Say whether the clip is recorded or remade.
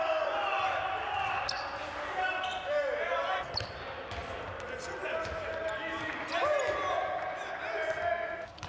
recorded